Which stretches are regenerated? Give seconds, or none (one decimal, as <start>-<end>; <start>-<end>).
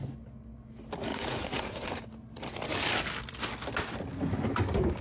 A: 1.1-2.0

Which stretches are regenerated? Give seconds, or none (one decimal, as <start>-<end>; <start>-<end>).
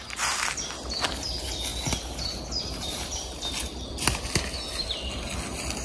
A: none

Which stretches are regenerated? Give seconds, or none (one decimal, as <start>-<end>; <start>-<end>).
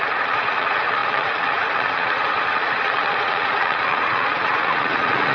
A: 0.0-5.3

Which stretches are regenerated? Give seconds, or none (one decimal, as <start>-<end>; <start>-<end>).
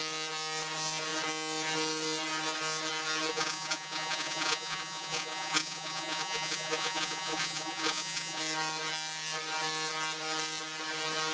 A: 3.3-8.4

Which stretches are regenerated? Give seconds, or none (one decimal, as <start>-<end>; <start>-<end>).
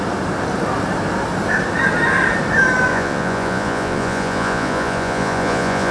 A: 2.9-5.9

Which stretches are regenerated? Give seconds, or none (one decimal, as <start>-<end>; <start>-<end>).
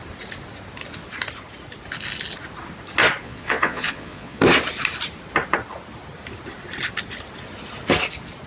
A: 3.2-4.4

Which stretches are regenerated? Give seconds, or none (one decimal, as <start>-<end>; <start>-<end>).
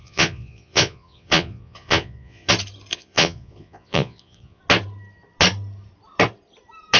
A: 0.0-2.5; 2.9-4.6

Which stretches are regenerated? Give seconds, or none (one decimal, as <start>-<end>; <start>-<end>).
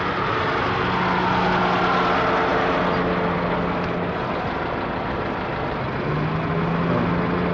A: none